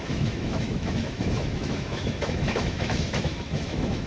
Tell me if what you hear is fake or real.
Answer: fake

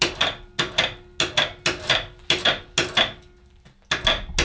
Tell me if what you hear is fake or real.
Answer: real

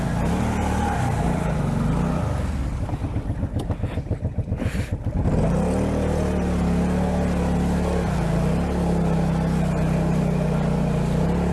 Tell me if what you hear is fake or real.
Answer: real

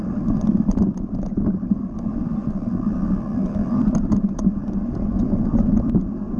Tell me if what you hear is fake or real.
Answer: real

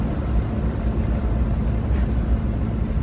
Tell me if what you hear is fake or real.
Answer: real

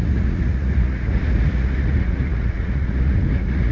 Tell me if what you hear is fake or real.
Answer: fake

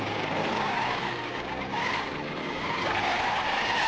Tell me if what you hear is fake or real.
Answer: fake